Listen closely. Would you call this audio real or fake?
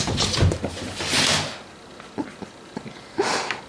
real